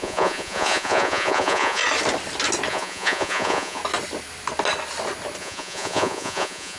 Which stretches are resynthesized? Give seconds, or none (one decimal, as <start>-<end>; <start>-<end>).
0.0-1.8; 2.7-3.8; 5.4-6.8